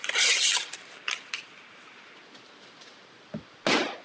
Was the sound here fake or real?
real